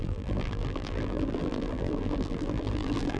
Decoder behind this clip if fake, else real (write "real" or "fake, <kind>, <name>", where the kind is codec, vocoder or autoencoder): fake, vocoder, BigVGAN v2